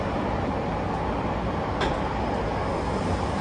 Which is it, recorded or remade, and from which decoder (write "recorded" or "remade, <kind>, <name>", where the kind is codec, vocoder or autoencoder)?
recorded